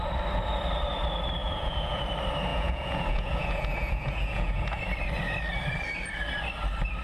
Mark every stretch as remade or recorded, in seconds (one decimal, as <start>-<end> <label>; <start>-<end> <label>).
0.0-1.4 recorded; 1.4-2.0 remade; 2.0-2.5 recorded; 2.5-4.8 remade; 4.8-7.0 recorded